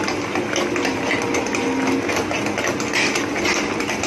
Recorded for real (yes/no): yes